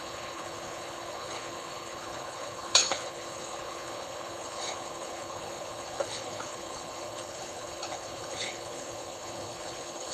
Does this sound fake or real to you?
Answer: fake